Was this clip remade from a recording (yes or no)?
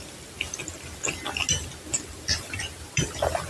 no